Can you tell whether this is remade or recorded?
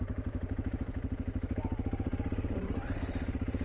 remade